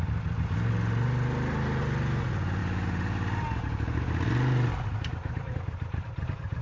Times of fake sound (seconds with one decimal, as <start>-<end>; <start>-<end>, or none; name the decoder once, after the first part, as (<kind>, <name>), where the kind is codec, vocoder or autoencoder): none